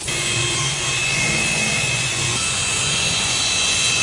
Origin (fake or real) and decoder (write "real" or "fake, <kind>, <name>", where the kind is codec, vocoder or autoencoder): fake, vocoder, Vocos